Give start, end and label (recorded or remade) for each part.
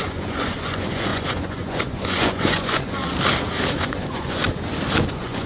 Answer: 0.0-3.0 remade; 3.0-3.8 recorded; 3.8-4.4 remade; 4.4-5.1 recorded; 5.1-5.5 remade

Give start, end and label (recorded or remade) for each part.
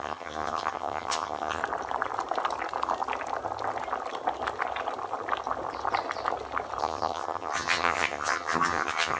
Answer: 0.0-1.6 remade; 1.6-6.8 recorded; 6.8-9.2 remade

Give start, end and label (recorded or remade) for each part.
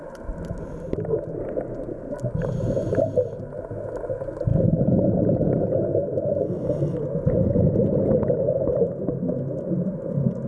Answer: 0.0-10.5 recorded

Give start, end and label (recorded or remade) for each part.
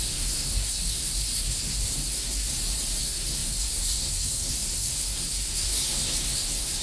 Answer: 0.0-2.5 remade; 2.5-3.0 recorded; 3.0-6.8 remade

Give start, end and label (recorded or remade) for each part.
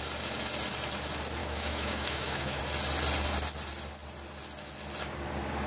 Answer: 0.0-1.4 recorded; 1.4-2.6 remade; 2.6-5.7 recorded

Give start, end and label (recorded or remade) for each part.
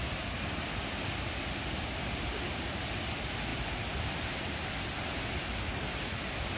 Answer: 0.0-6.6 recorded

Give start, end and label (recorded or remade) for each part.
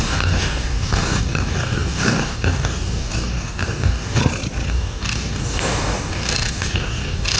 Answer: 0.0-4.2 remade; 4.2-4.7 recorded; 4.7-7.4 remade